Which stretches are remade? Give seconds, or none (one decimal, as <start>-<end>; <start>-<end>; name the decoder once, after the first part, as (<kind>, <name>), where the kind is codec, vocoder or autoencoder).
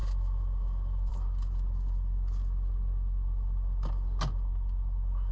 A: none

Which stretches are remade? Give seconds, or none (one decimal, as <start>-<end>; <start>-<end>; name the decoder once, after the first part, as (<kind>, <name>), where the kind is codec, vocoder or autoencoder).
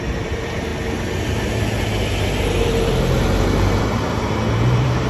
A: 0.0-0.7 (vocoder, BigVGAN v2); 3.8-5.1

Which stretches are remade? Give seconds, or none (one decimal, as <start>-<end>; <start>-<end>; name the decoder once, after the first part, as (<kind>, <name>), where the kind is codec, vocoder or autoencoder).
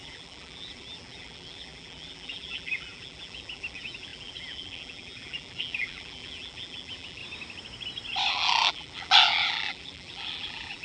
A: 0.0-7.2 (vocoder, BigVGAN v2); 8.3-10.8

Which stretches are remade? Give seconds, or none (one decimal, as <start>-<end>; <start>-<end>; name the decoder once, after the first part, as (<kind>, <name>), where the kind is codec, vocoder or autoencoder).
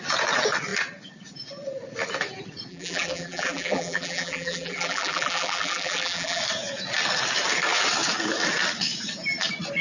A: 2.7-6.4 (vocoder, BigVGAN v2)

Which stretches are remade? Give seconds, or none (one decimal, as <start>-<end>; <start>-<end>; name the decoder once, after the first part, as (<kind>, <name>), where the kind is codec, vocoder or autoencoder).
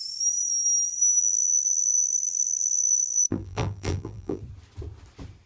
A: 1.2-4.4 (vocoder, BigVGAN v2)